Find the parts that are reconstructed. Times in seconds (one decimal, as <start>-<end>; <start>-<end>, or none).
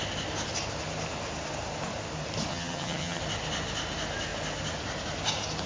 2.5-3.2